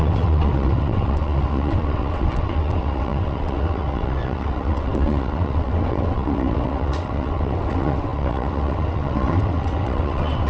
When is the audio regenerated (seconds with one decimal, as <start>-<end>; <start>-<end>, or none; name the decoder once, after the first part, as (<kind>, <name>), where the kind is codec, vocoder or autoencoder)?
0.0-10.5 (vocoder, WaveNeXt)